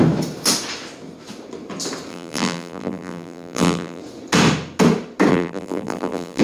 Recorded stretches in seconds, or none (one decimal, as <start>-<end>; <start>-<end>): 0.0-2.1; 4.0-5.3